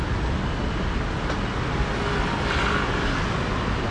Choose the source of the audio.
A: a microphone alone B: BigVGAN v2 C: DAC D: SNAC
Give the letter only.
A